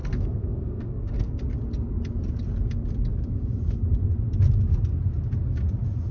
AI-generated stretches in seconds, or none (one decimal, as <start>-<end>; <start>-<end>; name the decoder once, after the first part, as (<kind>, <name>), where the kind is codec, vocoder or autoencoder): 0.0-1.4 (codec, SNAC)